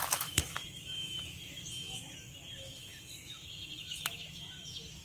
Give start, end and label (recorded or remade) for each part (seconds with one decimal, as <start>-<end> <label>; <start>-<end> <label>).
0.0-5.0 remade